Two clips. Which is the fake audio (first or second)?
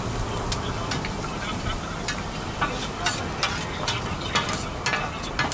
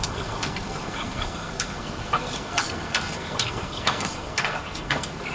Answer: second